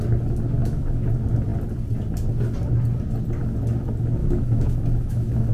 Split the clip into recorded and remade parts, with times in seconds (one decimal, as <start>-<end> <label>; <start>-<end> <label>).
0.0-0.6 recorded; 0.6-1.1 remade; 1.1-4.2 recorded; 4.2-5.5 remade

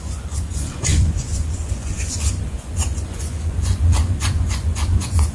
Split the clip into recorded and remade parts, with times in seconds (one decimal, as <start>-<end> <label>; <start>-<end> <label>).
0.0-5.3 remade

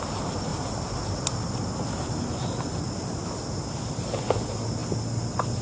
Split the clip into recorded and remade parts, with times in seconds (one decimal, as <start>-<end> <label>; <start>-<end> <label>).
0.0-5.6 recorded

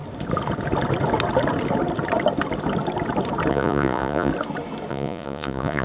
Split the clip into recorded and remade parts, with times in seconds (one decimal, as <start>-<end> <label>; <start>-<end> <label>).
0.0-3.5 recorded; 3.5-4.3 remade; 4.3-4.9 recorded; 4.9-5.8 remade

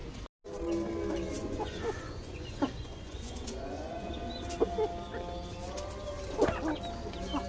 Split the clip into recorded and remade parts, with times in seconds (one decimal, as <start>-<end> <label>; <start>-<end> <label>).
0.0-1.4 recorded; 1.4-4.1 remade; 4.1-7.5 recorded

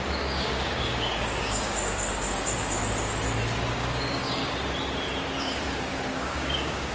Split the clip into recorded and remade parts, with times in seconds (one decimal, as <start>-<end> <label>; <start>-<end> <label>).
0.0-2.8 remade; 2.8-3.7 recorded; 3.7-4.4 remade; 4.4-5.4 recorded; 5.4-6.9 remade